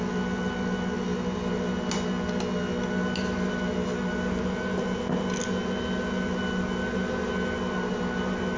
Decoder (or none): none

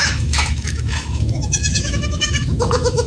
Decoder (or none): autoencoder, DAC-VAE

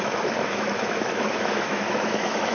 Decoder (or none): autoencoder, DAC-VAE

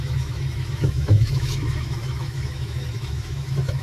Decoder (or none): autoencoder, DAC-VAE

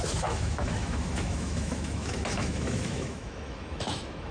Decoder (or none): autoencoder, DAC-VAE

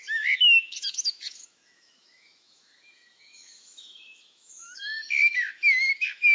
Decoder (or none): autoencoder, DAC-VAE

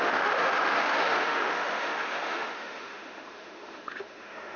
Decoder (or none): autoencoder, DAC-VAE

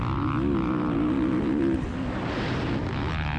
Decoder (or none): none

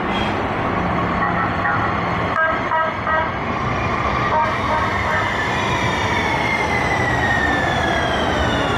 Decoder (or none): none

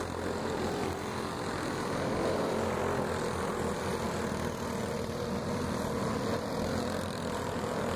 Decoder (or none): none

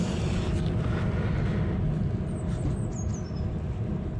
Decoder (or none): none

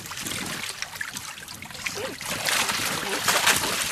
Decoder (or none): none